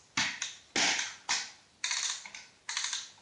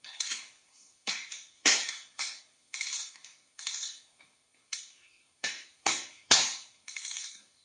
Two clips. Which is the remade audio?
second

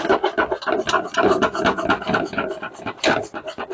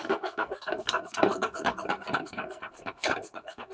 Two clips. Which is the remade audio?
second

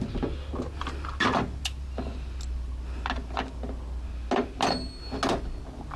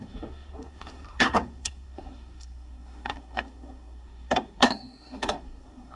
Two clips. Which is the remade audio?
second